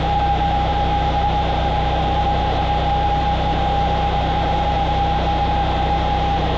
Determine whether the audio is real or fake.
fake